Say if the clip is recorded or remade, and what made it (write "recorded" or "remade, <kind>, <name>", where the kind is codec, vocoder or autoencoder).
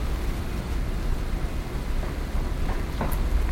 recorded